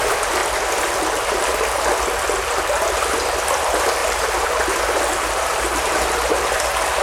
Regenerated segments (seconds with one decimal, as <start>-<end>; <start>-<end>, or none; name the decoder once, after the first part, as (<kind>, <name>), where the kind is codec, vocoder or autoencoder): 4.0-6.5 (vocoder, BigVGAN v2)